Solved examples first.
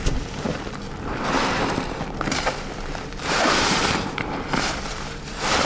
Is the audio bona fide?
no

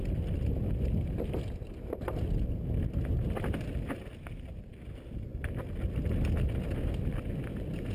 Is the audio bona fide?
yes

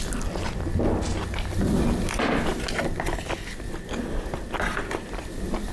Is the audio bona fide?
yes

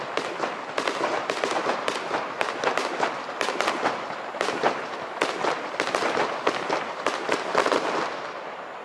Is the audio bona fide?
yes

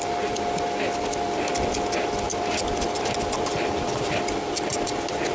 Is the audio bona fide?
yes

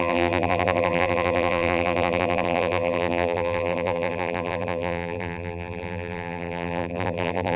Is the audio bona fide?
no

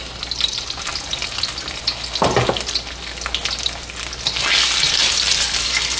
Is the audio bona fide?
yes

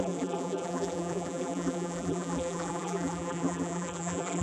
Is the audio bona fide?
no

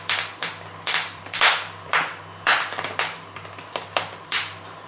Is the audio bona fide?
no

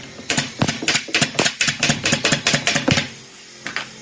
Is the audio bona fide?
yes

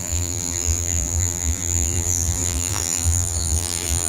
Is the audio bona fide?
no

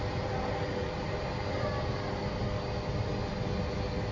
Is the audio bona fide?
yes